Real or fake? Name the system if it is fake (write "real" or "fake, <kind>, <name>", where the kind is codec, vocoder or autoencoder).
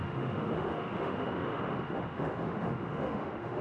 fake, autoencoder, DAC-VAE